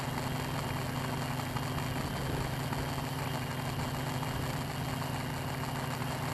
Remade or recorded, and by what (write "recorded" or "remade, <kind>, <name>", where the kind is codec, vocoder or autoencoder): recorded